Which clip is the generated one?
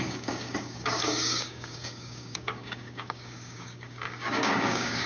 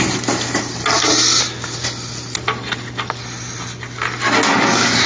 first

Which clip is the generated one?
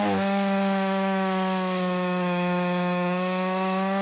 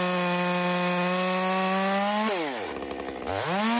first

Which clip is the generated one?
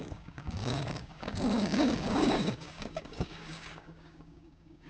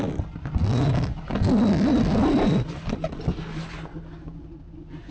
first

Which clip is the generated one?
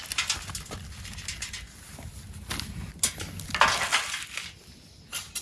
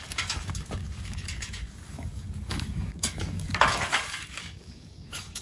second